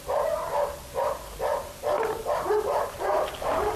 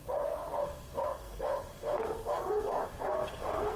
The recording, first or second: first